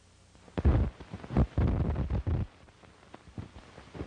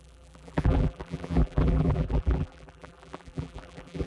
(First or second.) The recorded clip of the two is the first